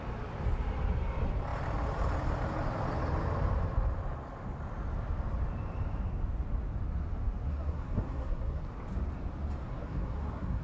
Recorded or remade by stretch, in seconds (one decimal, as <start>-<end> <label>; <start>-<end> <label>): 0.0-7.5 recorded; 7.5-8.6 remade; 8.6-9.6 recorded; 9.6-10.6 remade

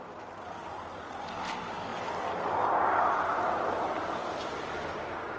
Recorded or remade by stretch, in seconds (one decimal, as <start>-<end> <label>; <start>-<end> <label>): 0.0-5.4 recorded

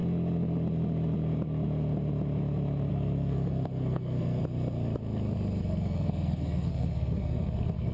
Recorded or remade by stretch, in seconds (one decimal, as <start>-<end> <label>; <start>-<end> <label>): 0.0-2.9 recorded; 2.9-4.4 remade; 4.4-5.6 recorded; 5.6-7.9 remade

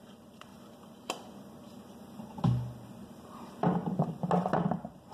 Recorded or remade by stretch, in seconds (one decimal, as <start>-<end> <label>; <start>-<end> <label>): 0.0-0.5 remade; 0.5-2.8 recorded; 2.8-3.8 remade; 3.8-4.4 recorded; 4.4-5.1 remade